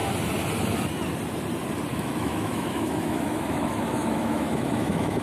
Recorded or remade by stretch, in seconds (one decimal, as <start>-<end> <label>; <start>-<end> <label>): 0.0-1.9 recorded; 1.9-5.2 remade